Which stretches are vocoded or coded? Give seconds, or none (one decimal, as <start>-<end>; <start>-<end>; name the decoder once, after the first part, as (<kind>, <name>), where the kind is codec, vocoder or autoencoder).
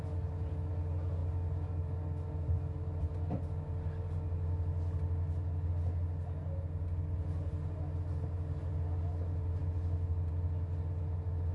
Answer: none